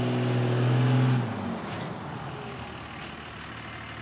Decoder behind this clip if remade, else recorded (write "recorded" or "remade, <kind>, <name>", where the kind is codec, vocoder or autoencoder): recorded